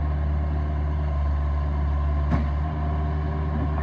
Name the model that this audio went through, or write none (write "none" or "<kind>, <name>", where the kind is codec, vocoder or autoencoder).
none